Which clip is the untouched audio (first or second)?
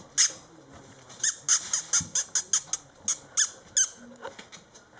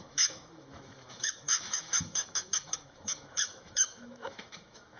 first